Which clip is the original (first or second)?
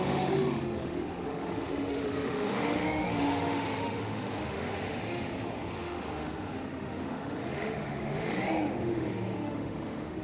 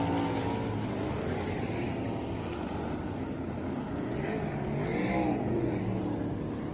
second